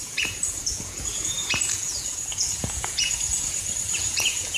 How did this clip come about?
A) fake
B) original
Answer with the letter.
A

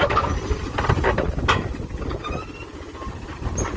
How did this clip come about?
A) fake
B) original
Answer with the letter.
B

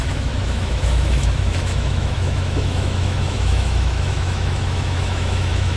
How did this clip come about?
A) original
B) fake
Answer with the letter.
B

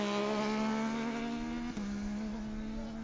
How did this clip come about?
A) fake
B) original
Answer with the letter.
B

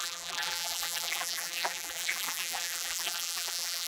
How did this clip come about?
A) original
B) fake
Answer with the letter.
B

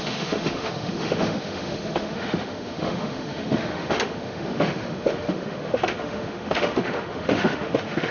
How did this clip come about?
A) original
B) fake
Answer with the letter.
B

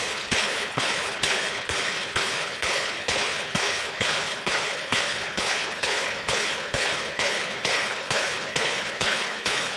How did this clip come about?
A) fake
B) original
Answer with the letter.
A